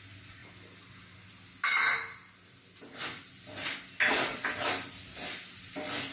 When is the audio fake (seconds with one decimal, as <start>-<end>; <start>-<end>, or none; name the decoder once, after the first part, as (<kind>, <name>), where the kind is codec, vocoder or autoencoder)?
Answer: none

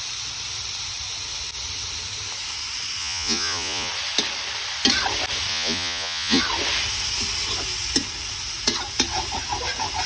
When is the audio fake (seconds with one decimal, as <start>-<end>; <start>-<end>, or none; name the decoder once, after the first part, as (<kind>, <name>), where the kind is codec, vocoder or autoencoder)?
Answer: 3.0-3.9 (vocoder, Vocos); 5.5-6.4

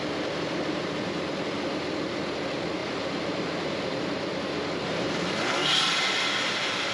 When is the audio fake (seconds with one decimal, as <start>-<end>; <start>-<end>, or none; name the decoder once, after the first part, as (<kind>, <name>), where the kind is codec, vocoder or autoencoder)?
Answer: 2.8-6.9 (vocoder, BigVGAN v2)

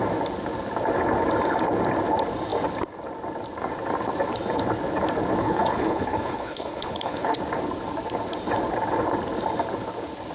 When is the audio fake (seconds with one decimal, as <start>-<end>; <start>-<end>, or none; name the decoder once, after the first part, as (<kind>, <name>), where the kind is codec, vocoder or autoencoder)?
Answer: 5.4-7.4 (codec, HILCodec)

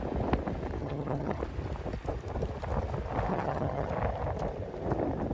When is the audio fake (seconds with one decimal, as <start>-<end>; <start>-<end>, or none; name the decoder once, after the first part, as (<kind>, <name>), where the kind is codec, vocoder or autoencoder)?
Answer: 0.8-1.4 (vocoder, HiFi-GAN); 3.3-3.9